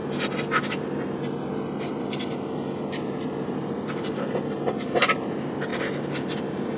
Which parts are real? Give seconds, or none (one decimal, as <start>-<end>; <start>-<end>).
0.0-6.8